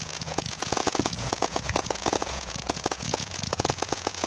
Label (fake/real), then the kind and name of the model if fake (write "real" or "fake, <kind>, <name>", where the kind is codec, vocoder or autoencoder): fake, vocoder, Vocos